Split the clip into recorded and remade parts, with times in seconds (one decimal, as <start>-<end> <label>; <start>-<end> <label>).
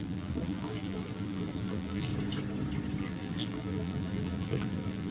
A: 0.0-2.1 remade; 2.1-3.0 recorded; 3.0-5.1 remade